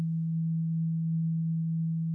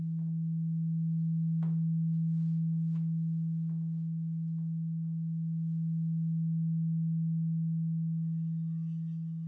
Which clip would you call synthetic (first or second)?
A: first